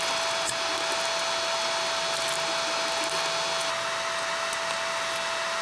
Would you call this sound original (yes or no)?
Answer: yes